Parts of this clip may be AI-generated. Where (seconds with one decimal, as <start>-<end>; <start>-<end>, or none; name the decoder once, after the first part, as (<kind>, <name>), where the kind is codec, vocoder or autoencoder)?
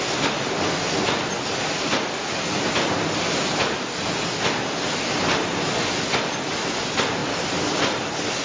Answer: none